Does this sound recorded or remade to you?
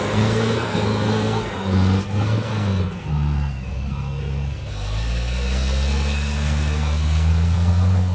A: remade